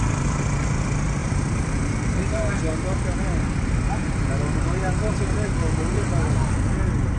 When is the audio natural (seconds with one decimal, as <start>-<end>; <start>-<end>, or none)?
0.0-1.2; 2.6-7.2